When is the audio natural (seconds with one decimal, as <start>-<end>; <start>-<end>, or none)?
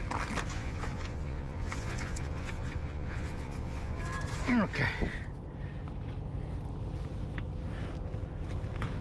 0.0-0.5; 4.0-9.0